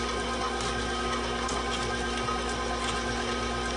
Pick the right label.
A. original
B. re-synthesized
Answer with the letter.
A